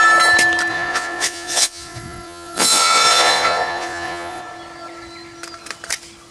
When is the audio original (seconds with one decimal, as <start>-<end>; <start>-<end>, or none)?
0.0-0.7; 4.4-6.3